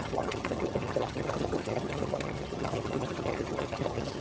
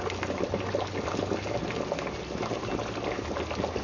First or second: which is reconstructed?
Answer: first